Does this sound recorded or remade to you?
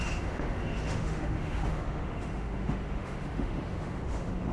remade